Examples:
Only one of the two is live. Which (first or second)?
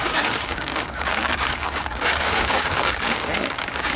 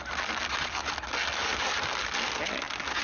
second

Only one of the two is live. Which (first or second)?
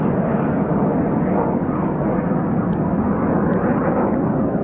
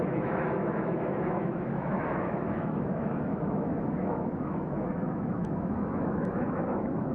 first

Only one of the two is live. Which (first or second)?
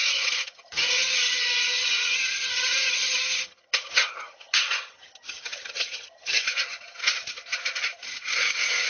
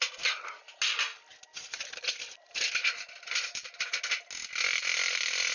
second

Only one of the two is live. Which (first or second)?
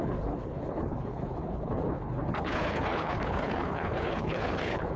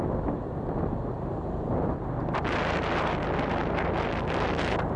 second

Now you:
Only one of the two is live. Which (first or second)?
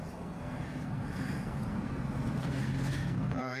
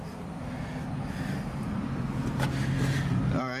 second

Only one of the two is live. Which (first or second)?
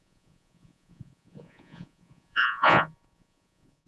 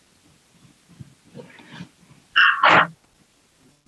second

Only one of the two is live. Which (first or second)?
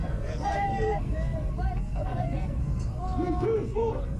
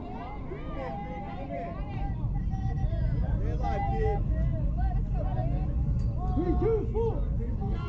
second